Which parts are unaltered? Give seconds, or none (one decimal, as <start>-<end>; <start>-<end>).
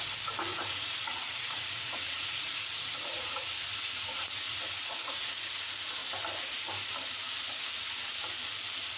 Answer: 0.0-0.5; 5.3-9.0